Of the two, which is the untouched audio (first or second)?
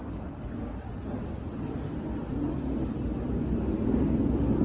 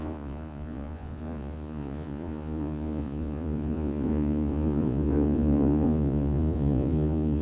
first